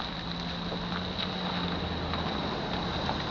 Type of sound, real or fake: real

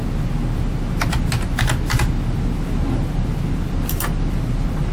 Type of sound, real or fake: real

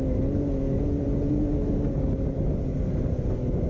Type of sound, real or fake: real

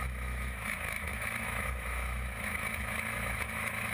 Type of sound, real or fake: fake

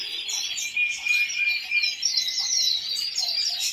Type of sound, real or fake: real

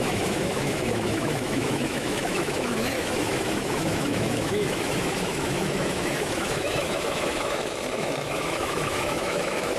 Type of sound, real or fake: fake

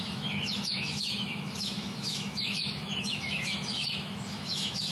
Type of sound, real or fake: fake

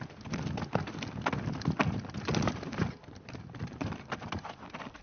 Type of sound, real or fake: real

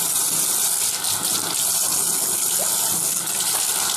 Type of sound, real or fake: real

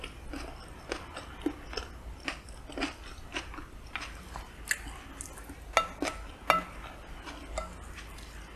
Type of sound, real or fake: real